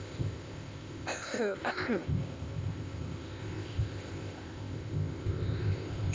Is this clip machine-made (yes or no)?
yes